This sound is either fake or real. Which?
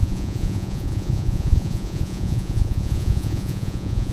fake